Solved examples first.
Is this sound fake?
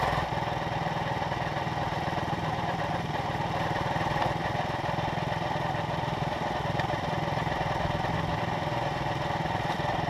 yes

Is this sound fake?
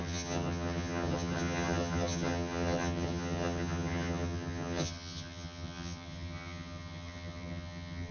yes